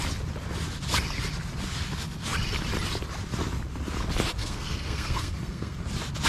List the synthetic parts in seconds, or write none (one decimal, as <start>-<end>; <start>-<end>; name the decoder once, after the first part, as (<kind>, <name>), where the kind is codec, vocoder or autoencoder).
4.4-5.8 (codec, SNAC)